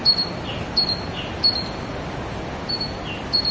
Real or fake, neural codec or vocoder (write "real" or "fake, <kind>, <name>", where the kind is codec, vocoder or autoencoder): real